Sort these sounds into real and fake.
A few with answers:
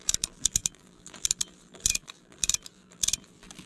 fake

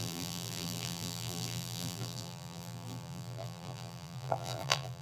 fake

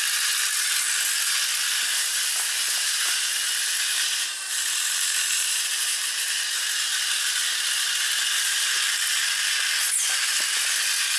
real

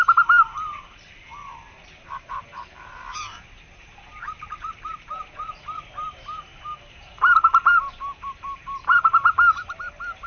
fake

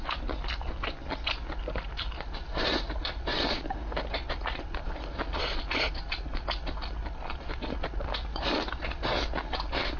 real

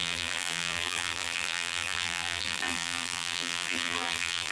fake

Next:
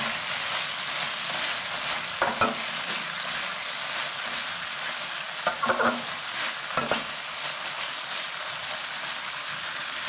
real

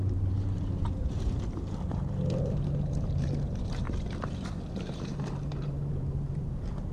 fake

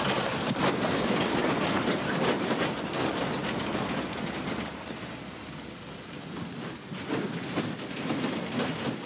real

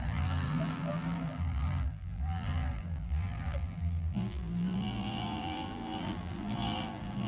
fake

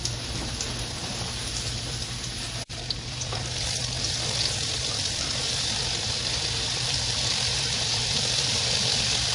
fake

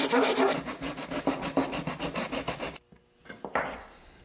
real